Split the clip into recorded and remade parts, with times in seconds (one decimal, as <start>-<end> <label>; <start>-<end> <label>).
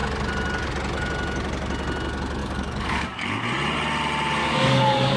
0.0-2.4 recorded; 2.4-3.4 remade; 3.4-4.4 recorded; 4.4-5.2 remade